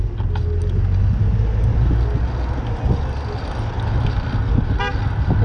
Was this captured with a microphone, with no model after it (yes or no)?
yes